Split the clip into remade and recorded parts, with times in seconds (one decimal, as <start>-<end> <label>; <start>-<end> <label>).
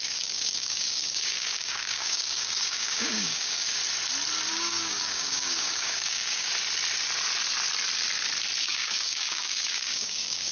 0.0-3.8 remade; 3.8-4.5 recorded; 4.5-6.5 remade; 6.5-8.6 recorded; 8.6-10.5 remade